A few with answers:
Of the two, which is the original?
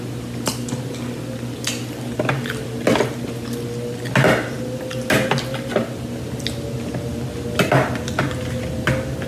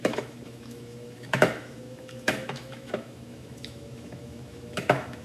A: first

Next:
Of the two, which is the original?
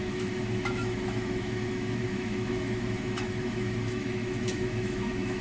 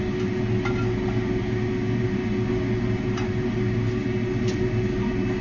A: second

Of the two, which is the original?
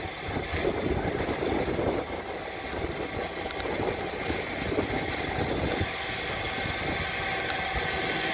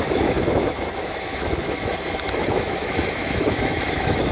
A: first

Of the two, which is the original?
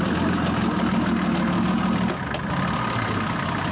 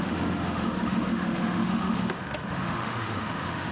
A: first